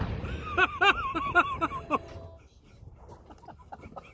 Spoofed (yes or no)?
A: no